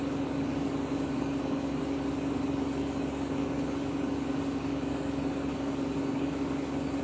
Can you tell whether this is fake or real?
fake